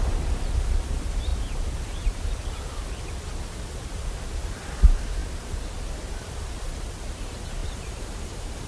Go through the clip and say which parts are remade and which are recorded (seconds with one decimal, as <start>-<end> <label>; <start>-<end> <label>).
0.0-7.6 recorded; 7.6-8.7 remade